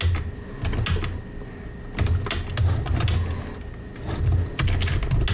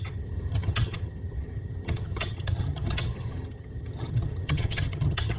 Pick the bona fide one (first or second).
first